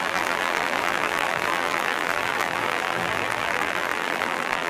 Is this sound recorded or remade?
remade